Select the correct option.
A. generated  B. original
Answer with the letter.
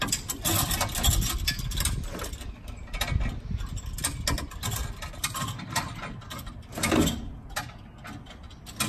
B